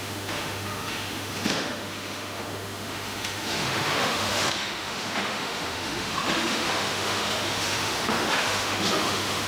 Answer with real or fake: fake